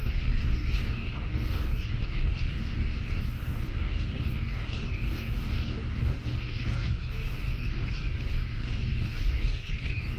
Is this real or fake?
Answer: fake